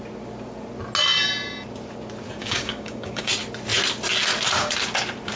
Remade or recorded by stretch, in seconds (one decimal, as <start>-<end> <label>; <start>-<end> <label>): 0.0-2.4 recorded; 2.4-3.3 remade; 3.3-5.4 recorded